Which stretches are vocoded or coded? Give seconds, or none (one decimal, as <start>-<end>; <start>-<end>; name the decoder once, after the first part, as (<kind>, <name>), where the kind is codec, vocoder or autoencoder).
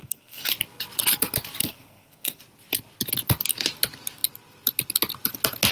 0.0-0.5 (codec, SNAC); 1.6-2.4